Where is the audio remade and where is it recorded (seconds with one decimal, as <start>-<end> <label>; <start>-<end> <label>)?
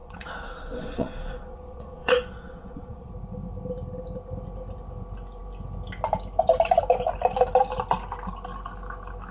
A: 0.0-3.1 remade; 3.1-9.3 recorded